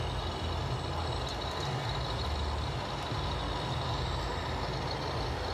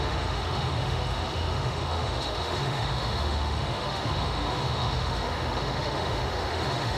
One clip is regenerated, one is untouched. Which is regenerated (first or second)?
second